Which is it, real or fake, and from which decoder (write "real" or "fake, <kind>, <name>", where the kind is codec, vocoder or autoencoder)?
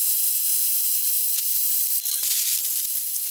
real